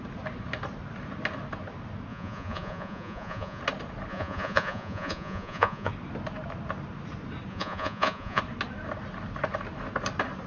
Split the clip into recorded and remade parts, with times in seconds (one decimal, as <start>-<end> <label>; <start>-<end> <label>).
0.0-2.1 recorded; 2.1-3.6 remade; 3.6-4.1 recorded; 4.1-5.9 remade; 5.9-7.5 recorded; 7.5-8.4 remade; 8.4-10.5 recorded